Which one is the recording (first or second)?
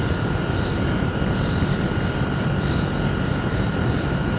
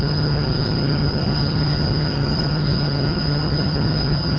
first